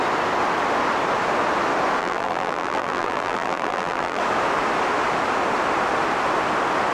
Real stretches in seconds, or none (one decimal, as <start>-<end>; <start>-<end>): 0.0-2.0; 4.2-6.9